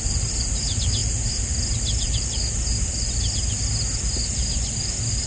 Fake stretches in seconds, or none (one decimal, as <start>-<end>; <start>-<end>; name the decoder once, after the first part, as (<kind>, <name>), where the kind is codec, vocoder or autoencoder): none